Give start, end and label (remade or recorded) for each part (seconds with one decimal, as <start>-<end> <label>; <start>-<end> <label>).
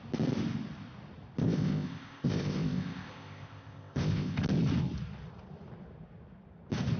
0.0-1.4 recorded; 1.4-4.4 remade; 4.4-7.0 recorded